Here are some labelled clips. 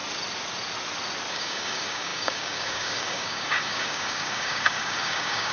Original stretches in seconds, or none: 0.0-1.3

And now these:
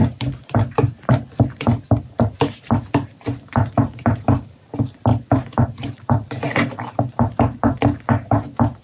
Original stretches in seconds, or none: none

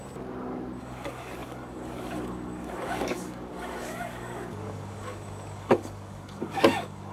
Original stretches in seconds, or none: 0.0-0.8

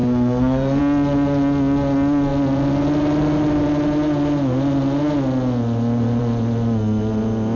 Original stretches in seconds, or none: 0.8-7.6

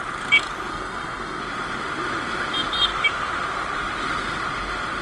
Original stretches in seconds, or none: 0.0-0.7; 1.4-5.0

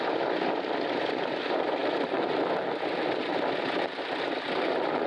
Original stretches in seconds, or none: 0.0-1.8; 2.6-3.2

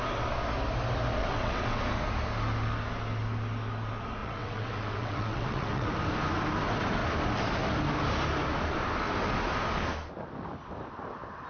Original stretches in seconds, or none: 0.0-1.2; 1.8-4.2; 5.9-11.5

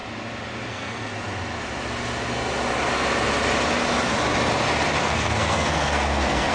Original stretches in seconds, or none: 0.0-0.7; 1.1-5.0